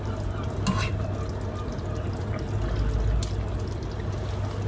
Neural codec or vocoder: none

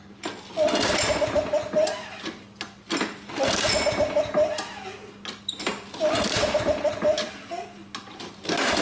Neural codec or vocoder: none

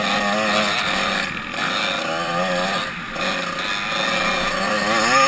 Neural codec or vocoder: none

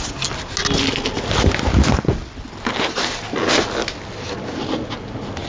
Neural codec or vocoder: none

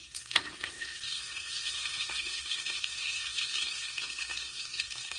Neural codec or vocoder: codec, SNAC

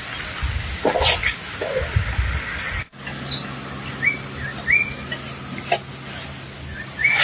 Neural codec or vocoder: none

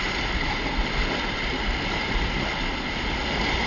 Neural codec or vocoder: none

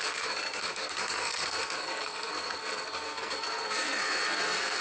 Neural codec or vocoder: codec, SNAC